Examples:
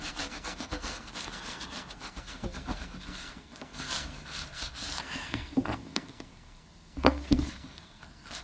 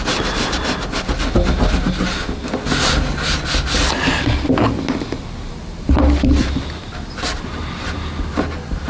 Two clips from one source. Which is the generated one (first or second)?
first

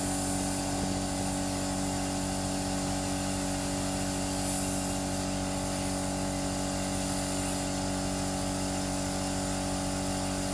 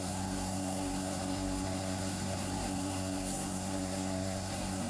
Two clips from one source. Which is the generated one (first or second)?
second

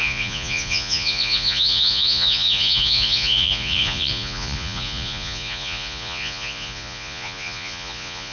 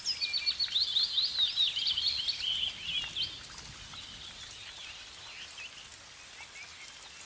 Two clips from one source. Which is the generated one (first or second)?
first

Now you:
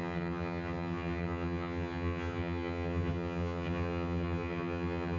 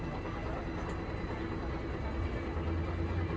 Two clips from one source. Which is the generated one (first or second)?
first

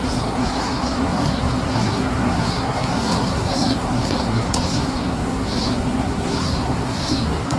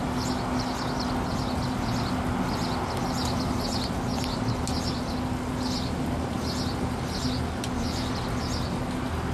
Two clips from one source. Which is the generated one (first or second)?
first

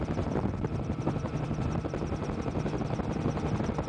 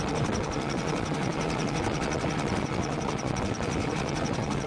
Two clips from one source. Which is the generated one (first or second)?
second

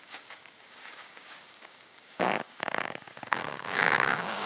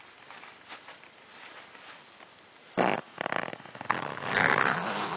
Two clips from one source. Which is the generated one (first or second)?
first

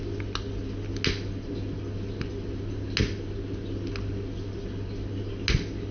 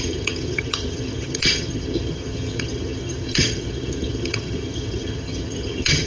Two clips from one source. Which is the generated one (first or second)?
second